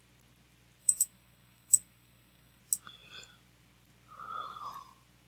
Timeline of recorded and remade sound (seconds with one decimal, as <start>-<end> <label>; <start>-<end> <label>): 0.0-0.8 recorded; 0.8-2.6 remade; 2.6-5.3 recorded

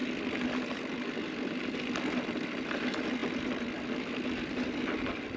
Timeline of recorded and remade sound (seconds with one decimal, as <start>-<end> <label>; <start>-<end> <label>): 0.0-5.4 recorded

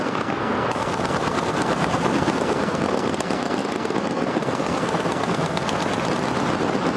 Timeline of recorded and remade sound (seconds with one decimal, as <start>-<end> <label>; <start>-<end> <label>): 0.0-5.8 remade; 5.8-7.0 recorded

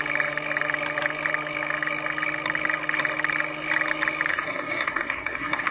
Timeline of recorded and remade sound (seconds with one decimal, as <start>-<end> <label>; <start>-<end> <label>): 0.0-4.3 recorded; 4.3-5.7 remade

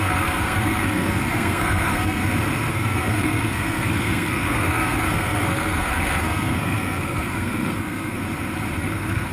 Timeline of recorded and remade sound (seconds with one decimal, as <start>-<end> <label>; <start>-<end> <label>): 0.0-2.2 remade; 2.2-2.7 recorded; 2.7-8.2 remade; 8.2-8.8 recorded; 8.8-9.3 remade